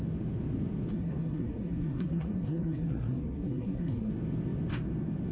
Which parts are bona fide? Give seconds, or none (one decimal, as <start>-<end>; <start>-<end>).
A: 0.0-0.9; 4.1-5.3